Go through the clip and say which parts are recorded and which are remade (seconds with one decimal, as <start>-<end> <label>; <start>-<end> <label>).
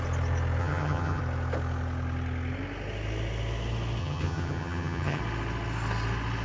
0.0-0.6 recorded; 0.6-1.2 remade; 1.2-4.0 recorded; 4.0-5.2 remade; 5.2-6.4 recorded